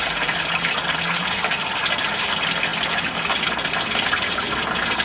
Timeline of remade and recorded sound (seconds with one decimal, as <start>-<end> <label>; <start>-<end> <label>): 0.0-5.0 recorded